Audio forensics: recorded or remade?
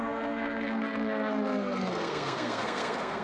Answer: remade